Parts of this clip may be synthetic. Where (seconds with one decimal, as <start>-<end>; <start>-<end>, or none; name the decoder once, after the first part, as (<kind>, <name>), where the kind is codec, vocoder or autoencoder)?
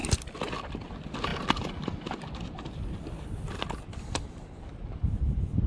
none